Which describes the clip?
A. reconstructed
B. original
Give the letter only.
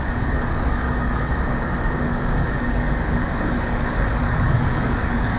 A